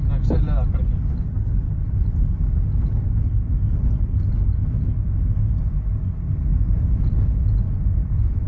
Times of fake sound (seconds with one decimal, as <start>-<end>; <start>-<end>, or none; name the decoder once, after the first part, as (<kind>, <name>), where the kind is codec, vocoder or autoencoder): 6.5-7.4 (vocoder, BigVGAN v2)